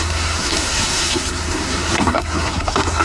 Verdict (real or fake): fake